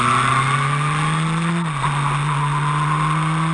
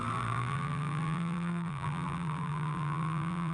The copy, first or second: second